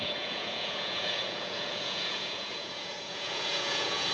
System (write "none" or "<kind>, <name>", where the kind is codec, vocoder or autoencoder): vocoder, Vocos